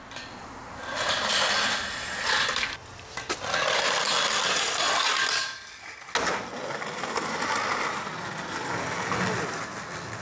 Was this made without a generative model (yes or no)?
yes